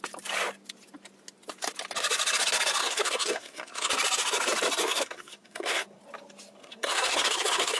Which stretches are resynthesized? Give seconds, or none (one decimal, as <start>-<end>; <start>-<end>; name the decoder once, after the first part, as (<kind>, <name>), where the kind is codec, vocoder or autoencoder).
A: 2.8-3.9 (codec, SNAC); 4.8-6.0; 6.6-7.8